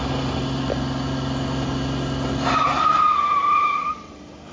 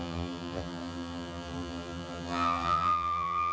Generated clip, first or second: second